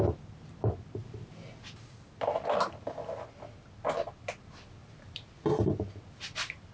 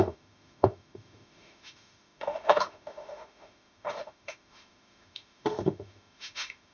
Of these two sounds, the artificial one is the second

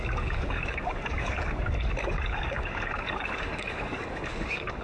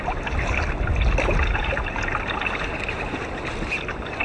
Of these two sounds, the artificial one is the first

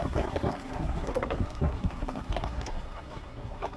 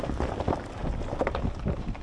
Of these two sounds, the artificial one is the first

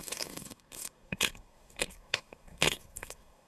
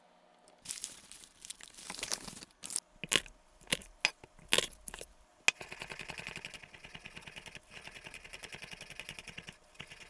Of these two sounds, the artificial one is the first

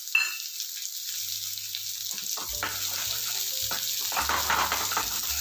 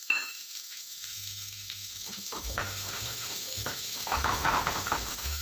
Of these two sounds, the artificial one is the second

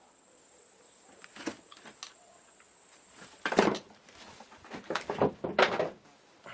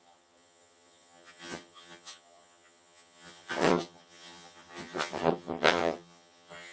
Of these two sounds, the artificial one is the second